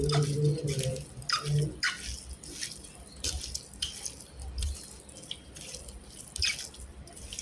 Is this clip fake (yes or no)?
no